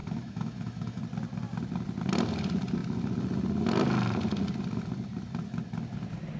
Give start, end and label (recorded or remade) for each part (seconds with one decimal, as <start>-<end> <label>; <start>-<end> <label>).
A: 0.0-1.0 remade; 1.0-6.4 recorded